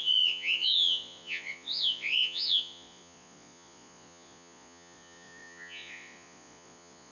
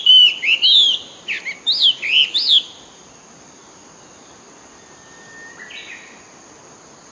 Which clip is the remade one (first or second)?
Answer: first